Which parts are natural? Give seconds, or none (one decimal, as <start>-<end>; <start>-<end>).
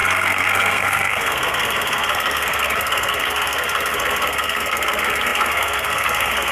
none